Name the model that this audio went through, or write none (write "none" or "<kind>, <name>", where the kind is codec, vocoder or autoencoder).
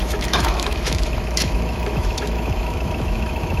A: autoencoder, DAC-VAE